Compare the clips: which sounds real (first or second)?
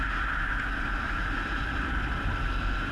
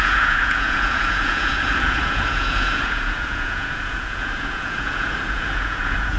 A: first